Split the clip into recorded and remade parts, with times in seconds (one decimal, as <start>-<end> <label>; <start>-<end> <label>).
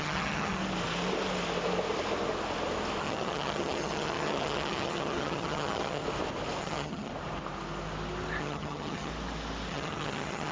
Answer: 0.0-0.6 remade; 0.6-3.0 recorded; 3.0-6.0 remade; 6.0-6.6 recorded; 6.6-7.1 remade; 7.1-8.4 recorded; 8.4-9.1 remade; 9.1-9.7 recorded; 9.7-10.5 remade